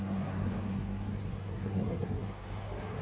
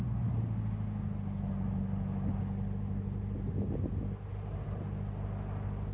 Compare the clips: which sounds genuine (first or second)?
second